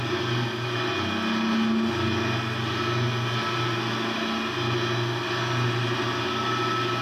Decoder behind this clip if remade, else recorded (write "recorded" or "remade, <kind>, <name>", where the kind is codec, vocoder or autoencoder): recorded